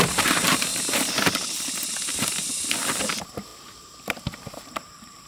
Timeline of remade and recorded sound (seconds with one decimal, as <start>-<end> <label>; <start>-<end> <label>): 0.0-0.7 remade; 0.7-2.9 recorded; 2.9-5.3 remade